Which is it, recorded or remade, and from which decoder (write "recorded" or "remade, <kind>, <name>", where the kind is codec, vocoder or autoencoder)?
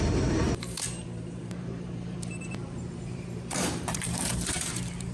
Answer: remade, vocoder, BigVGAN v2